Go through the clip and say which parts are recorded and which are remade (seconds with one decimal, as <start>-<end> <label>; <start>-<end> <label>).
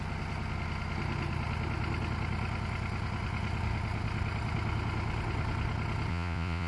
0.0-6.1 recorded; 6.1-6.7 remade